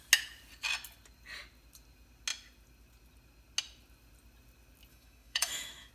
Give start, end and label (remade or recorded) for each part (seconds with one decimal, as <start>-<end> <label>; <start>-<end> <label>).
0.0-4.9 recorded; 4.9-5.9 remade